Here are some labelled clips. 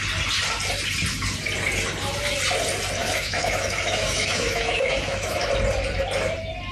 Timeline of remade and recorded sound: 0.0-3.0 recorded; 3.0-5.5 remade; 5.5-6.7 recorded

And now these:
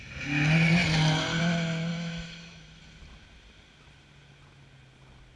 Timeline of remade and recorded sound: 0.0-1.9 recorded; 1.9-2.8 remade; 2.8-5.4 recorded

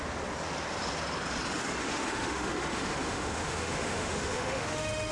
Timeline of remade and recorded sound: 0.0-1.8 recorded; 1.8-5.1 remade

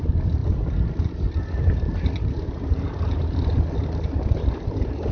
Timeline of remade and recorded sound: 0.0-5.1 recorded